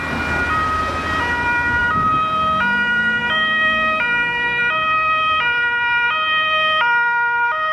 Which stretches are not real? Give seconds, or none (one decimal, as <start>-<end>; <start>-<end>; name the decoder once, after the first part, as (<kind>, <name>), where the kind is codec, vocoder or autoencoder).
none